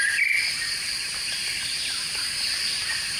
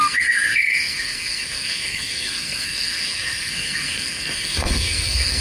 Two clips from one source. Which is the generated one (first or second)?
second